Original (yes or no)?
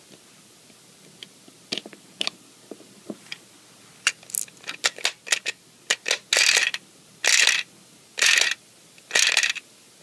yes